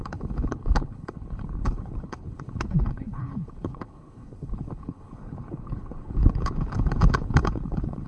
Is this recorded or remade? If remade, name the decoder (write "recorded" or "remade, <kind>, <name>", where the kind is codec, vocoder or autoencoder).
remade, codec, HILCodec